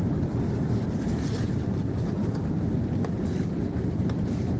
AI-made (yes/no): yes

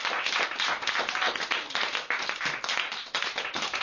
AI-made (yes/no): no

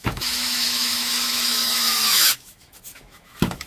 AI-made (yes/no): yes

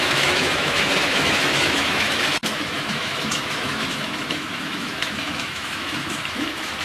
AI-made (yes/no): yes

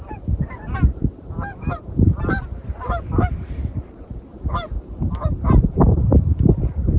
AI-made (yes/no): yes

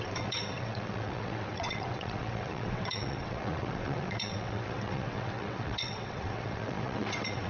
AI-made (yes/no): yes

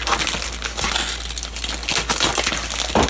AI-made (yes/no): no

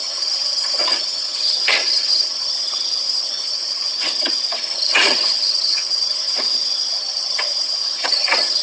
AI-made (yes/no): yes